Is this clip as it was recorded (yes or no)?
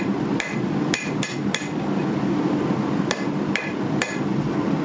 yes